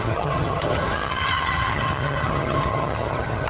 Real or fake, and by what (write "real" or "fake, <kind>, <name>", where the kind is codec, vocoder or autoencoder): fake, vocoder, HiFi-GAN